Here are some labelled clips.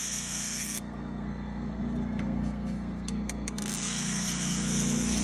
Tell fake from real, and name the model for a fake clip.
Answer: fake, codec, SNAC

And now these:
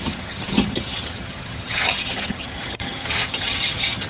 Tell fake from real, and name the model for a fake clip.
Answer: fake, vocoder, HiFi-GAN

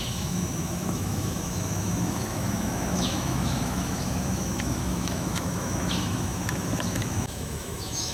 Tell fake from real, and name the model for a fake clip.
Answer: fake, autoencoder, DAC-VAE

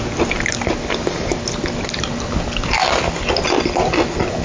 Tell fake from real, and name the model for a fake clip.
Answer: real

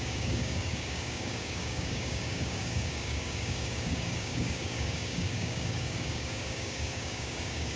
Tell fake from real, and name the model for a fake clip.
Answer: fake, codec, DAC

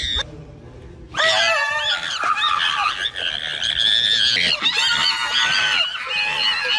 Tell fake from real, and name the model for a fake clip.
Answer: real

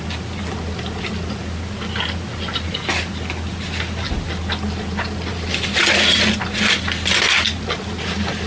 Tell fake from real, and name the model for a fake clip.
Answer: real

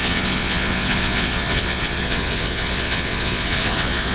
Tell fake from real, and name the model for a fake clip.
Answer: fake, vocoder, WaveNeXt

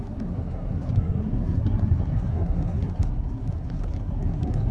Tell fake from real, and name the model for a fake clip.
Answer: fake, codec, SNAC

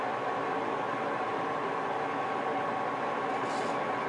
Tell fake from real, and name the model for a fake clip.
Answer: real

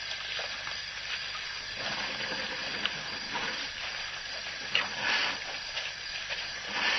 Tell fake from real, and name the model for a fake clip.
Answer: fake, vocoder, BigVGAN v2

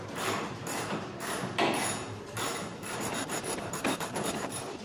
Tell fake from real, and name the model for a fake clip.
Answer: fake, vocoder, BigVGAN v2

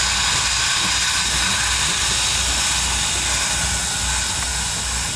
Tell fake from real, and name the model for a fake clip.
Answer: real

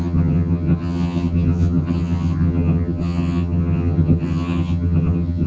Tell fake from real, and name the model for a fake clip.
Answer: fake, vocoder, HiFi-GAN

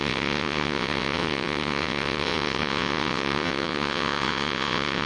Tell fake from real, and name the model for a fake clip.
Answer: fake, vocoder, WaveNeXt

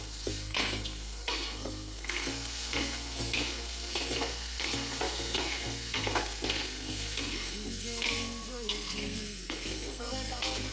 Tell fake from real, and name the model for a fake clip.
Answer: fake, codec, SNAC